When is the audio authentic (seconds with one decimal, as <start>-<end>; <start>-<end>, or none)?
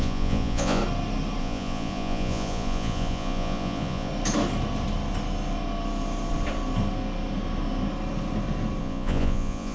0.8-1.4; 4.1-8.8